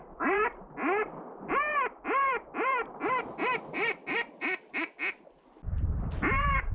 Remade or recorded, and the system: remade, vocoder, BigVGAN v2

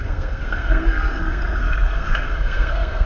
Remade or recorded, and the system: remade, codec, SNAC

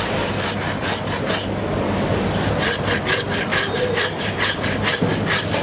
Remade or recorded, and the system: recorded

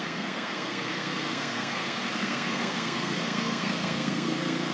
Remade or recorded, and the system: remade, codec, SNAC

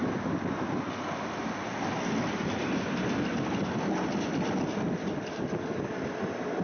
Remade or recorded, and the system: recorded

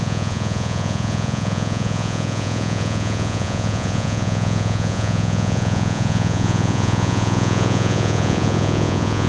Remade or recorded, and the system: remade, vocoder, Vocos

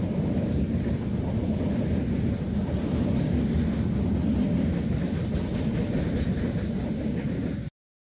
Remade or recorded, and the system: recorded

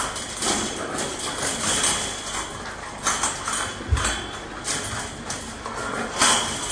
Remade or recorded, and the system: recorded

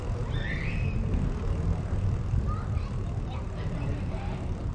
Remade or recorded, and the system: recorded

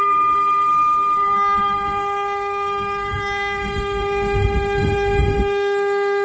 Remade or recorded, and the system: remade, autoencoder, DAC-VAE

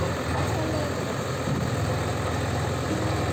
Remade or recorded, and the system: recorded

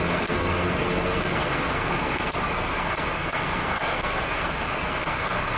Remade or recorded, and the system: remade, codec, SNAC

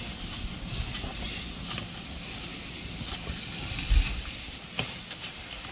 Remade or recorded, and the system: recorded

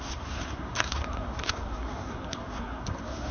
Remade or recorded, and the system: remade, codec, SNAC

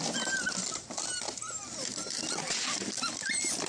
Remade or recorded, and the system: recorded